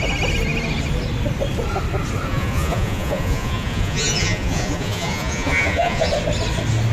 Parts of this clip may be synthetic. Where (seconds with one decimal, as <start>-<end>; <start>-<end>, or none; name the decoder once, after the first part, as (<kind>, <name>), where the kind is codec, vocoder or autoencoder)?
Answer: 2.3-6.1 (vocoder, Vocos)